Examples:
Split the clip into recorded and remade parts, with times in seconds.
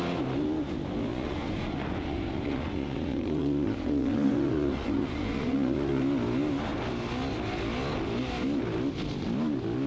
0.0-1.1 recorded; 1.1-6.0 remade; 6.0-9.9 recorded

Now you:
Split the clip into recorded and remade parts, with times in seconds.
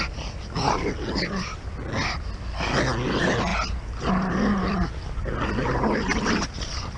0.0-7.0 recorded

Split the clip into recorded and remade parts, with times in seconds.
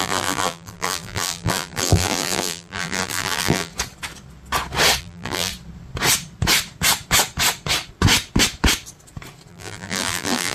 0.0-3.7 remade; 3.7-5.0 recorded; 5.0-5.5 remade; 5.5-9.5 recorded; 9.5-10.5 remade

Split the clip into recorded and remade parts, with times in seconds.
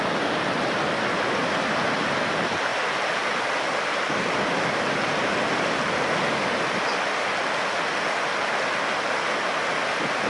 0.0-10.3 recorded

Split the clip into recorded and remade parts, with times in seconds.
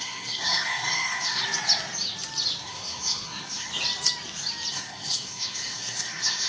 0.0-1.4 remade; 1.4-2.6 recorded; 2.6-3.7 remade; 3.7-4.7 recorded; 4.7-6.5 remade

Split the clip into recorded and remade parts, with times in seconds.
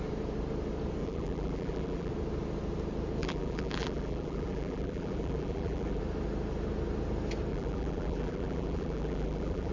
0.0-1.0 recorded; 1.0-2.1 remade; 2.1-3.2 recorded; 3.2-6.0 remade; 6.0-7.5 recorded; 7.5-9.7 remade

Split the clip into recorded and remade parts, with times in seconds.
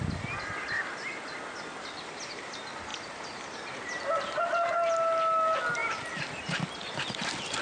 0.0-7.6 recorded